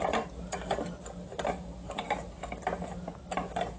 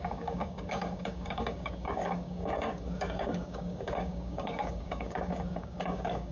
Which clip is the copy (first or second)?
second